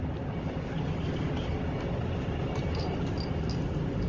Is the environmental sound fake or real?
real